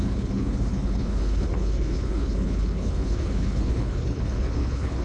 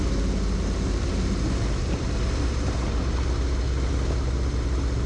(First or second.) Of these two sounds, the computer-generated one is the first